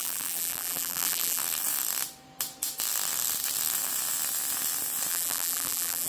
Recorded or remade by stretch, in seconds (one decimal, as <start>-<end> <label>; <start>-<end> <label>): 0.0-1.4 remade; 1.4-5.1 recorded; 5.1-6.1 remade